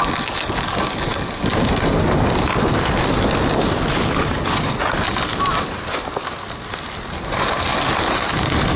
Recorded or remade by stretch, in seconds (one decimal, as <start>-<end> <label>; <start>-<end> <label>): 0.0-3.9 recorded; 3.9-4.7 remade; 4.7-8.8 recorded